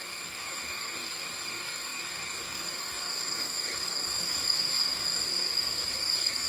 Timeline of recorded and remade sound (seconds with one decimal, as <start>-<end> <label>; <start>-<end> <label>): 0.0-6.5 remade